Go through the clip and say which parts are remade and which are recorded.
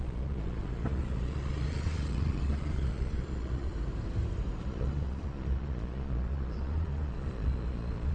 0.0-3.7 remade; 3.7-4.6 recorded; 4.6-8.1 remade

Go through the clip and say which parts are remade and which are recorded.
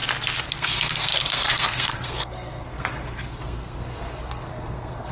0.0-0.5 recorded; 0.5-5.1 remade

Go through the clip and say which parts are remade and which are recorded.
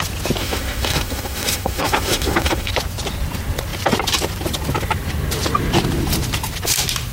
0.0-0.4 recorded; 0.4-2.7 remade; 2.7-7.1 recorded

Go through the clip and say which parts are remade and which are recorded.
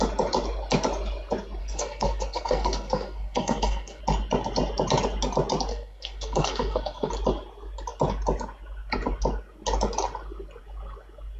0.0-1.6 recorded; 1.6-4.0 remade; 4.0-5.7 recorded; 5.7-7.1 remade; 7.1-11.4 recorded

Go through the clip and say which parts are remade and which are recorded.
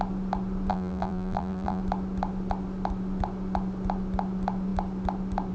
0.0-0.7 recorded; 0.7-1.8 remade; 1.8-5.5 recorded